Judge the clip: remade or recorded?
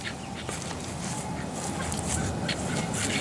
recorded